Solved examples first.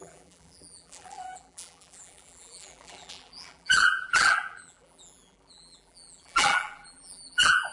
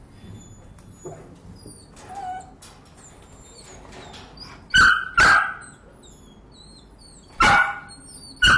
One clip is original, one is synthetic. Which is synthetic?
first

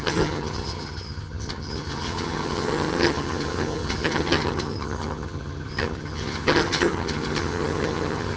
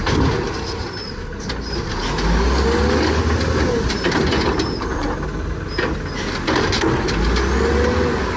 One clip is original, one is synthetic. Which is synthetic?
first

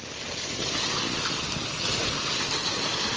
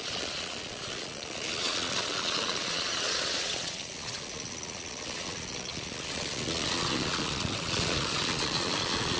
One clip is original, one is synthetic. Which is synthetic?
second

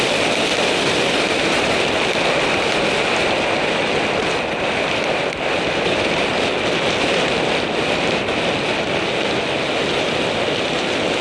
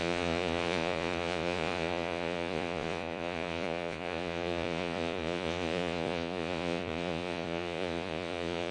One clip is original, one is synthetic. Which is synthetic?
second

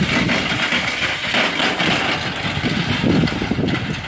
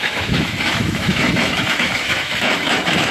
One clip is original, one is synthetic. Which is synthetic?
second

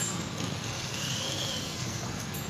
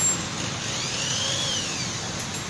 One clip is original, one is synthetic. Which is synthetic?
first